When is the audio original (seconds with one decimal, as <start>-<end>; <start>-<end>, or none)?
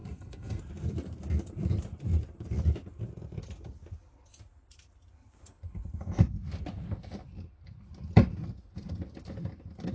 0.6-9.9